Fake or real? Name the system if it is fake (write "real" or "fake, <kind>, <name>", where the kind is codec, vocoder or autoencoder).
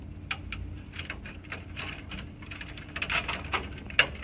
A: real